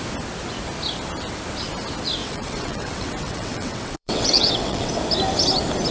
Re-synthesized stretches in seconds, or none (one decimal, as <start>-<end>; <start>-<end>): 2.2-4.9